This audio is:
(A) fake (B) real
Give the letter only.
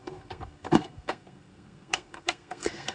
A